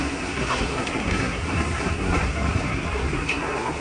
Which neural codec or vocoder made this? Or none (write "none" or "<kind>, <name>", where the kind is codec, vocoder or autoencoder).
codec, SNAC